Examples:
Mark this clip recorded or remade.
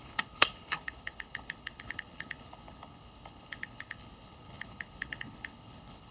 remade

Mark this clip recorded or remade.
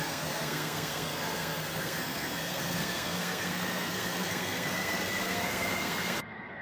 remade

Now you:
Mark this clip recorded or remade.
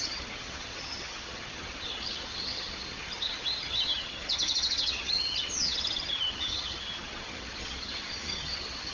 remade